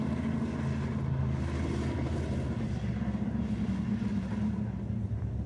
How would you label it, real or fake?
real